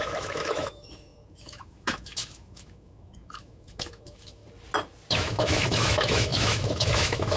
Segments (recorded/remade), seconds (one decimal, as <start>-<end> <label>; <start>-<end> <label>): 0.0-4.4 remade; 4.4-5.1 recorded; 5.1-7.4 remade